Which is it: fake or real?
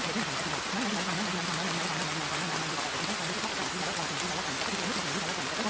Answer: real